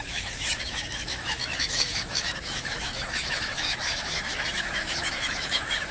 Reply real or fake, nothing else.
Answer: fake